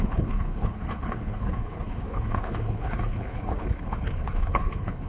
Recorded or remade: remade